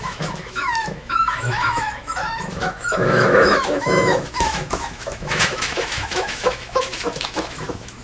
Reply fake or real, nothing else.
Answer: fake